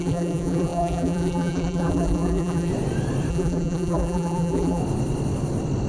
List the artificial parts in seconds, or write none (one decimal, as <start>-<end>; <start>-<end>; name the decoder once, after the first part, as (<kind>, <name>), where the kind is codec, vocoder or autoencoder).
0.0-2.7 (vocoder, BigVGAN v2); 3.3-4.8